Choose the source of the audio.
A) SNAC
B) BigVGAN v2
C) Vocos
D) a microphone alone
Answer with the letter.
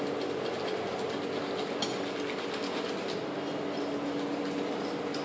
D